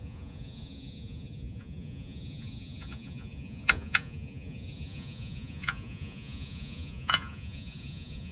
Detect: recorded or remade remade